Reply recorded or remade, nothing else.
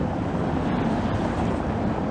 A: recorded